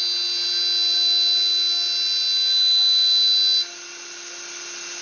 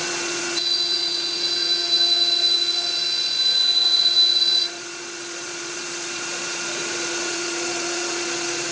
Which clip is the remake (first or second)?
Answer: second